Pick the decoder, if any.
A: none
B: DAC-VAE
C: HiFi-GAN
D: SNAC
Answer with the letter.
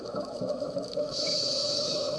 B